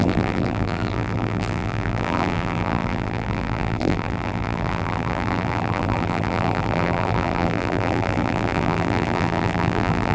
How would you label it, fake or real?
fake